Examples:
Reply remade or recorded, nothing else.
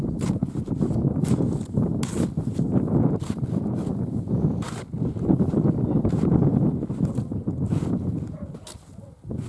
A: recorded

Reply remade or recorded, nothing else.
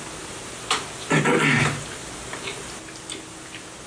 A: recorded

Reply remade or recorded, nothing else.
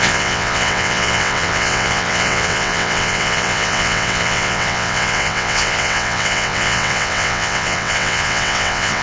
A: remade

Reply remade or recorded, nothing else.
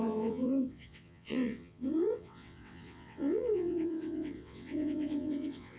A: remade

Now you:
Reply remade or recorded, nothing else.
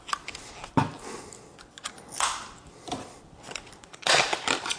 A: recorded